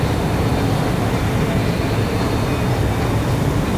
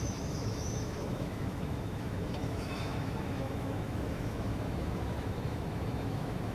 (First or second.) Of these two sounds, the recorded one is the first